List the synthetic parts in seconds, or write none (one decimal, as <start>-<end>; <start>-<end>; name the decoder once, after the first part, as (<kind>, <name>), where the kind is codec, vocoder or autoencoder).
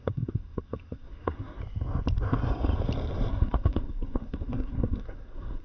0.0-1.6 (codec, SNAC); 3.3-5.6